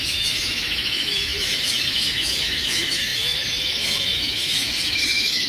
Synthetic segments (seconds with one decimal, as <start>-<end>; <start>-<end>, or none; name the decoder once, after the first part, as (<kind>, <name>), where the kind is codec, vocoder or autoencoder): 0.0-5.5 (autoencoder, DAC-VAE)